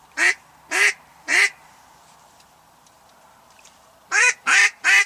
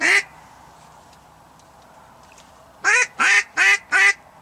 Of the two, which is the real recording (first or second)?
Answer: second